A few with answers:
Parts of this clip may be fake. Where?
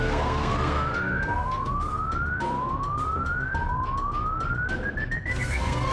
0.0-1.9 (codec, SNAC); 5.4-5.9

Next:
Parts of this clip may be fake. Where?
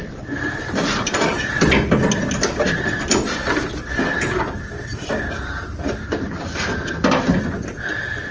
none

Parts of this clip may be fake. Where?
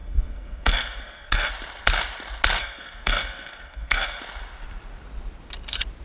0.0-1.5 (codec, SNAC); 2.6-4.2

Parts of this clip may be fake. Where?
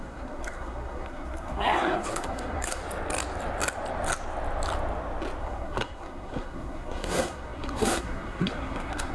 0.0-2.8 (codec, SNAC); 5.4-9.1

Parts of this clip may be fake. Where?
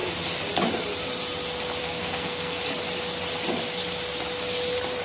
1.8-2.6 (codec, SNAC)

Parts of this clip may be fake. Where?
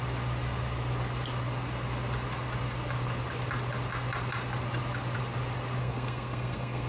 5.8-6.9 (codec, SNAC)